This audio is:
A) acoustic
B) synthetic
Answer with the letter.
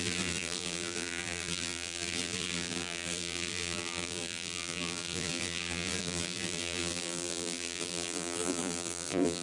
B